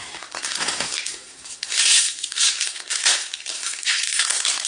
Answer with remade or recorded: remade